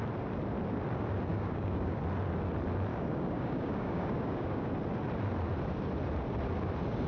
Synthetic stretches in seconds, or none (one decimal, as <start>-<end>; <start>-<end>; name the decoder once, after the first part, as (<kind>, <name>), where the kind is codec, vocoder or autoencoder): 1.3-2.0 (codec, DAC); 2.9-4.7